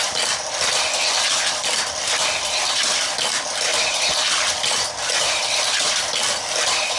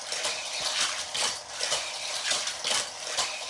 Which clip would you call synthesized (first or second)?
second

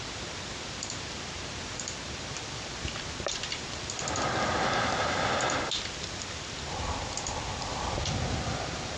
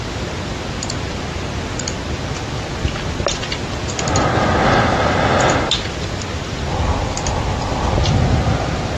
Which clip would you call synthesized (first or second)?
first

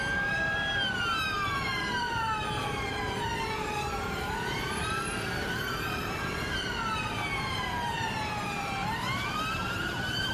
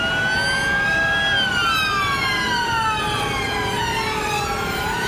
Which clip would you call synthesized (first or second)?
first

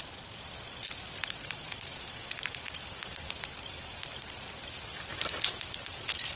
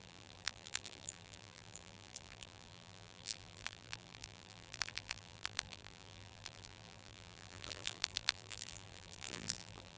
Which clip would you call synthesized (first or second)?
second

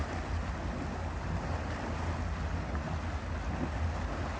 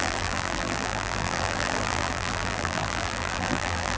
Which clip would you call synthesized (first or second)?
second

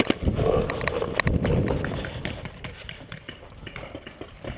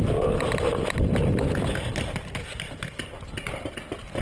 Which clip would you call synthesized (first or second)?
first